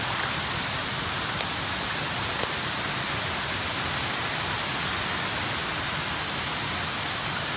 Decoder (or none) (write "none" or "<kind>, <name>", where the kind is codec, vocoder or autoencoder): none